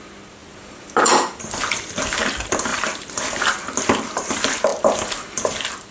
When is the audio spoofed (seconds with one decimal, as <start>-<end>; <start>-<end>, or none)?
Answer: 0.4-2.3; 2.7-3.8; 4.7-5.9